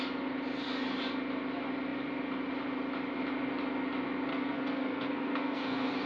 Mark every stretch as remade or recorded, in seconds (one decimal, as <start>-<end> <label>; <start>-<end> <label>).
0.0-4.3 recorded; 4.3-6.1 remade